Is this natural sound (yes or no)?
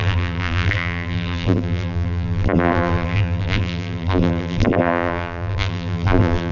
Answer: no